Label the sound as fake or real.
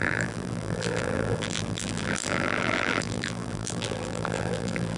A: fake